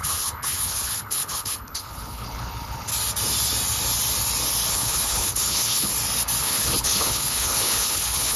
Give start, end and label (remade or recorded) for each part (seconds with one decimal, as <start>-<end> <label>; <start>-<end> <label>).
0.0-2.9 remade; 2.9-4.7 recorded; 4.7-5.9 remade; 5.9-6.4 recorded; 6.4-8.4 remade